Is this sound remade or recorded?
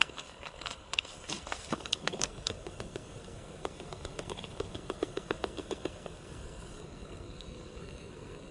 remade